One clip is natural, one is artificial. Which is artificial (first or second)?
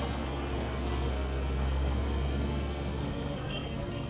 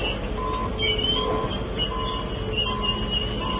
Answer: first